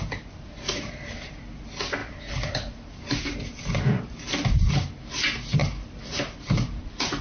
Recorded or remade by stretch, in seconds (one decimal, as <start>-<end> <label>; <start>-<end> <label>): 0.0-7.2 recorded